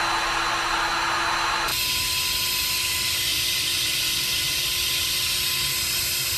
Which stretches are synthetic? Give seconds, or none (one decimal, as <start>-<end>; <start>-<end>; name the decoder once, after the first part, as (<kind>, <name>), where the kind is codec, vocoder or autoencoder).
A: none